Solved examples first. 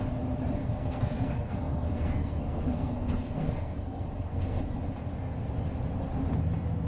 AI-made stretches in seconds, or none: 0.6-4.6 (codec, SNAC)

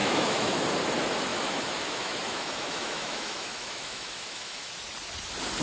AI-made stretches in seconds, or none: 0.0-0.6 (autoencoder, DAC-VAE); 1.3-4.7

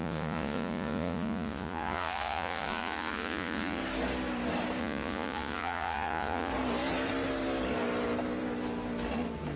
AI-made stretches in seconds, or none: 0.0-3.8 (vocoder, Vocos); 4.8-6.5

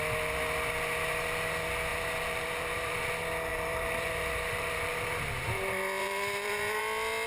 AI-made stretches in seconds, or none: 1.9-3.1 (vocoder, BigVGAN v2); 3.5-4.9; 6.0-6.8

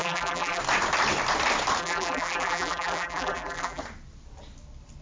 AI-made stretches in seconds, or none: 0.0-0.6 (vocoder, BigVGAN v2); 1.8-3.8

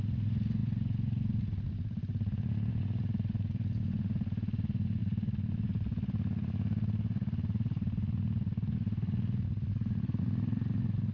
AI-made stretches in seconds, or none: none

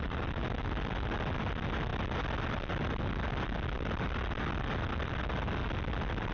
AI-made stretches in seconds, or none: none

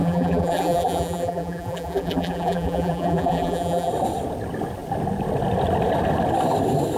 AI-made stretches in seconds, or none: 0.0-3.9 (vocoder, BigVGAN v2)